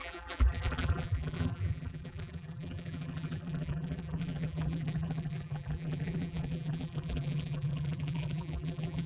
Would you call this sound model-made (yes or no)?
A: yes